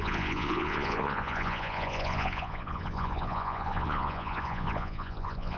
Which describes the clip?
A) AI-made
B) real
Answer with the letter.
A